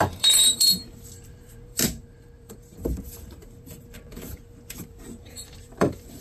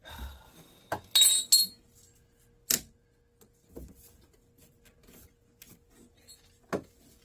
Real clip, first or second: second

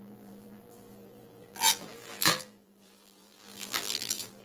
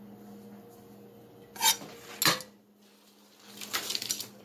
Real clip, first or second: second